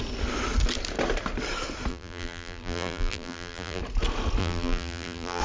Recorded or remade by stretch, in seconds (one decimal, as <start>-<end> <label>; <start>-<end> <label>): 0.0-1.9 recorded; 1.9-3.8 remade; 3.8-4.4 recorded; 4.4-5.4 remade